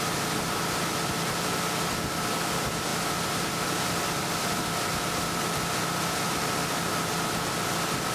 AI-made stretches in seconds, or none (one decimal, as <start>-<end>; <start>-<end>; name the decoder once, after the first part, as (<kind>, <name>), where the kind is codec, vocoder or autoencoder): none